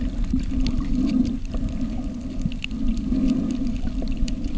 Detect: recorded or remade recorded